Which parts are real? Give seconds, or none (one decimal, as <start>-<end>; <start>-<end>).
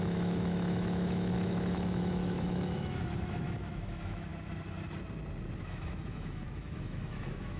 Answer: 4.3-5.6